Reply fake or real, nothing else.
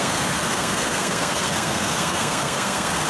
fake